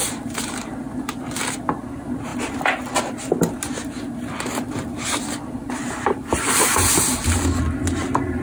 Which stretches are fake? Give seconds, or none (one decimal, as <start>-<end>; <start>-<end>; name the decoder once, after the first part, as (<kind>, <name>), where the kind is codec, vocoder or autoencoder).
0.0-1.0 (vocoder, BigVGAN v2); 5.8-6.9